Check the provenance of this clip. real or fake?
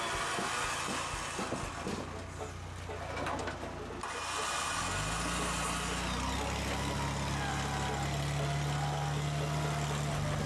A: real